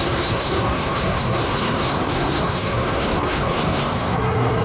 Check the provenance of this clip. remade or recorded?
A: remade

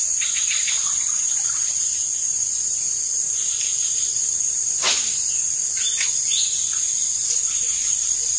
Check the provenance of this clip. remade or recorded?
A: recorded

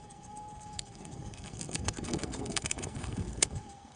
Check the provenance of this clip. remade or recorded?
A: remade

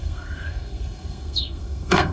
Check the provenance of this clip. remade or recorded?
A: remade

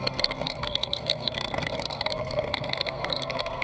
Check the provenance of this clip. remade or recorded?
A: remade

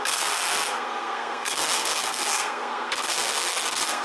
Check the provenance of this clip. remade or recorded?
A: remade